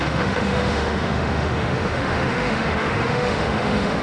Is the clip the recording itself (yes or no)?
no